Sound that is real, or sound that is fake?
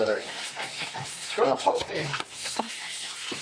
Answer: fake